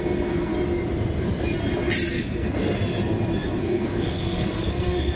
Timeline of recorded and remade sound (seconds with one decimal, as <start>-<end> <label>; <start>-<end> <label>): 0.0-0.5 remade; 0.5-2.1 recorded; 2.1-2.9 remade; 2.9-3.6 recorded; 3.6-5.2 remade